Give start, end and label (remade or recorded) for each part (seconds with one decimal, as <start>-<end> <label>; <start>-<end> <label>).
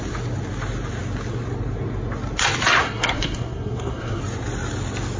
0.0-2.8 recorded; 2.8-4.2 remade; 4.2-5.2 recorded